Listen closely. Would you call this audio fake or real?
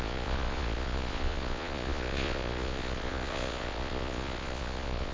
fake